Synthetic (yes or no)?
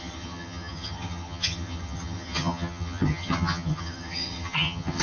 yes